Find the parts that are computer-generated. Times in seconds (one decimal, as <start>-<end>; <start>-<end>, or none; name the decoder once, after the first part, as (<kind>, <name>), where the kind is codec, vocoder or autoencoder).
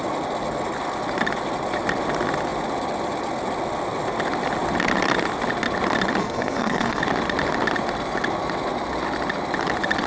6.2-7.0 (codec, SNAC)